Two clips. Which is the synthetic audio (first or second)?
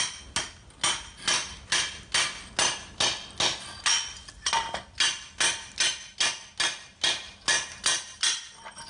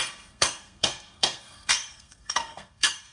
second